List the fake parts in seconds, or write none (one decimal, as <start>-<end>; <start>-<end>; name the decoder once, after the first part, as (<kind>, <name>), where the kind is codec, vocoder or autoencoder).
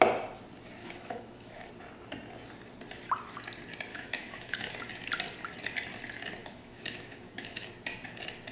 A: 0.8-1.7 (autoencoder, DAC-VAE); 3.9-4.7; 6.4-7.7